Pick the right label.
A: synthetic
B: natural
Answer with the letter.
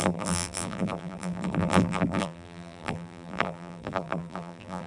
A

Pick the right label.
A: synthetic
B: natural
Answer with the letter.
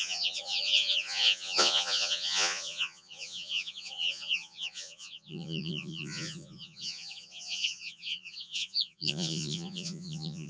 A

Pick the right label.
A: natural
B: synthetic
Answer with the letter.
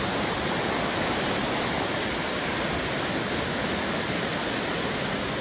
A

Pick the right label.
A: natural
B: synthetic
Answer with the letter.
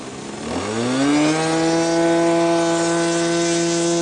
A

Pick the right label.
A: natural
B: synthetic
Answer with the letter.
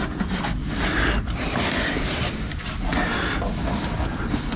A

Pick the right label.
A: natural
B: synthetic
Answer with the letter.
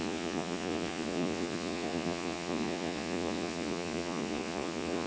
B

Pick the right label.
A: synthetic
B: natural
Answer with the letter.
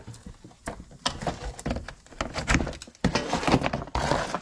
B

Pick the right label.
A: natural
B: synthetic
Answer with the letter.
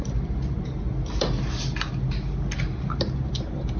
A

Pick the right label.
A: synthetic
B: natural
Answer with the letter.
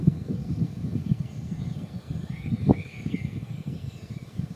A